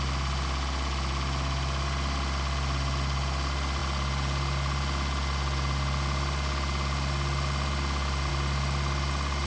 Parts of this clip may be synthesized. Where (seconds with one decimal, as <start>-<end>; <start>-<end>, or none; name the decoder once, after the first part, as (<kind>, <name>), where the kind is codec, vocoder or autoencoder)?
none